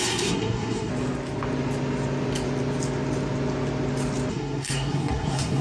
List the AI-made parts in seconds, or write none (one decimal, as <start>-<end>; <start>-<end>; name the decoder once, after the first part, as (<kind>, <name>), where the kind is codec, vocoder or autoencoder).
0.0-0.9 (codec, SNAC); 4.3-5.6